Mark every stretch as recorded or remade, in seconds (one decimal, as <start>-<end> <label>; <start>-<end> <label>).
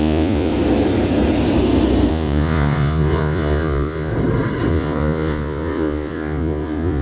0.0-0.5 remade; 0.5-2.1 recorded; 2.1-4.1 remade; 4.1-4.7 recorded; 4.7-7.0 remade